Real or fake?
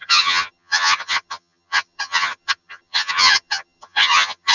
fake